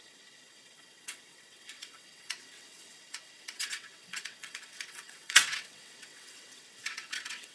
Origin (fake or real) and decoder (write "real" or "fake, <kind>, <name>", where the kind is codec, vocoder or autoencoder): fake, vocoder, WaveNeXt